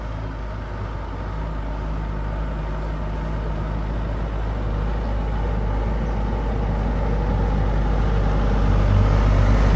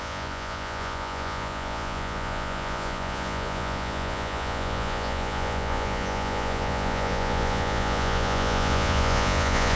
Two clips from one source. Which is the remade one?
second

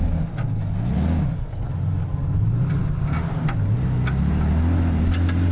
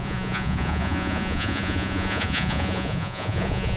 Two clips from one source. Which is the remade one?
second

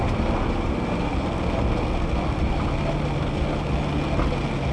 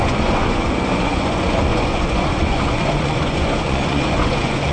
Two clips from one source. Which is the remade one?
second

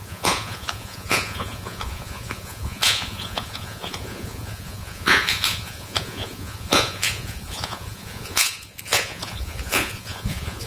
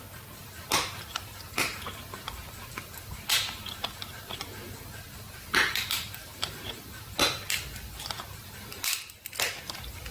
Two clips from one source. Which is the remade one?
first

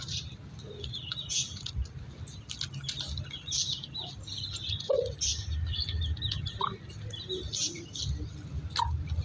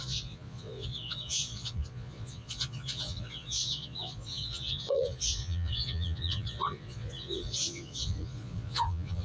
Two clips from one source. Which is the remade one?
second